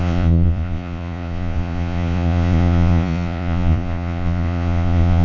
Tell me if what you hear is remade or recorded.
remade